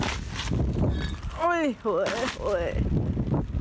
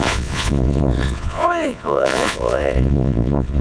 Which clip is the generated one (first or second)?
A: second